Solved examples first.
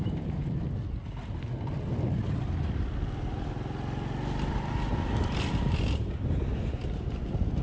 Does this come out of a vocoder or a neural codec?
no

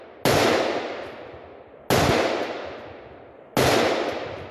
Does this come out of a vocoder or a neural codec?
no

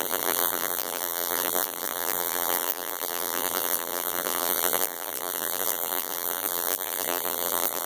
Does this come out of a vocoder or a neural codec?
yes